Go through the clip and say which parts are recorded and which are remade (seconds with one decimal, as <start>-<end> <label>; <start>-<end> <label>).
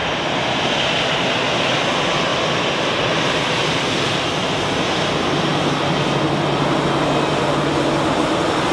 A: 0.0-2.3 recorded; 2.3-4.2 remade; 4.2-8.7 recorded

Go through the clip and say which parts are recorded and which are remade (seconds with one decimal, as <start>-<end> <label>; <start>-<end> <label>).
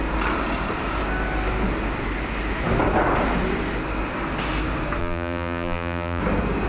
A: 0.0-5.0 recorded; 5.0-6.2 remade; 6.2-6.7 recorded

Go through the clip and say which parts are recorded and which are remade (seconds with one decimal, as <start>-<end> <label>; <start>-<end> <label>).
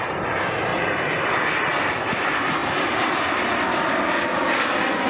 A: 0.0-5.1 recorded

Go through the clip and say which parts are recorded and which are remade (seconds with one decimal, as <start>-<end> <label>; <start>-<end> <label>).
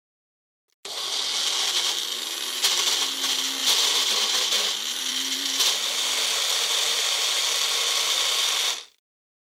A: 0.0-3.6 recorded; 3.6-5.6 remade; 5.6-6.5 recorded; 6.5-7.2 remade; 7.2-9.4 recorded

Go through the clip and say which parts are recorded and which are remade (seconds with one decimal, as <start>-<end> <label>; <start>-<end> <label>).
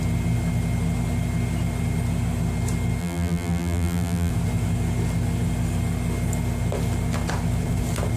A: 0.0-3.0 recorded; 3.0-4.3 remade; 4.3-8.2 recorded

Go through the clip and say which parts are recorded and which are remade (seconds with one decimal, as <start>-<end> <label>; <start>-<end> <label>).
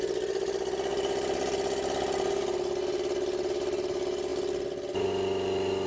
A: 0.0-0.9 recorded; 0.9-2.3 remade; 2.3-4.3 recorded; 4.3-5.1 remade; 5.1-5.9 recorded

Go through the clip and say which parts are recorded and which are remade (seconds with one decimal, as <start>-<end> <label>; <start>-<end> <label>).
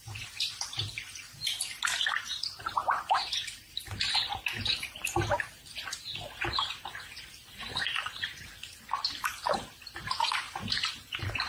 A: 0.0-11.5 recorded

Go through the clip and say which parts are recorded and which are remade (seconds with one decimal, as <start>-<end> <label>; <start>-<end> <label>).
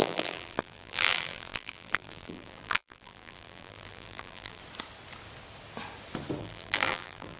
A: 0.0-4.6 remade; 4.6-6.4 recorded; 6.4-7.4 remade